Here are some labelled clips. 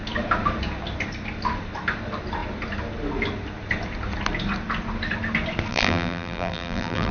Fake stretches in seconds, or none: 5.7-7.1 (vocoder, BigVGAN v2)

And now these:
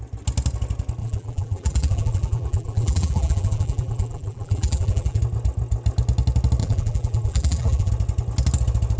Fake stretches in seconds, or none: 1.0-5.2 (vocoder, BigVGAN v2); 6.6-7.9

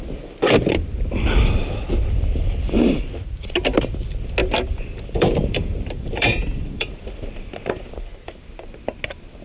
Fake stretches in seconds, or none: 4.4-7.2 (vocoder, BigVGAN v2)

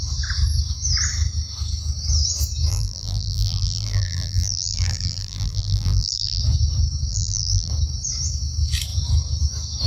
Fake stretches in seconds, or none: 2.7-6.4 (vocoder, BigVGAN v2); 7.1-7.7

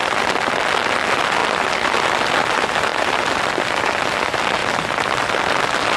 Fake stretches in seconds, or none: 1.4-2.3 (vocoder, BigVGAN v2); 2.9-3.7

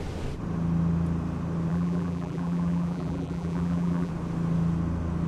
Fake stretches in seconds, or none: 1.7-4.1 (vocoder, BigVGAN v2)